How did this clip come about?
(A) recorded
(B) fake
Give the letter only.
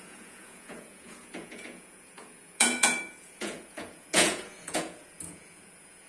B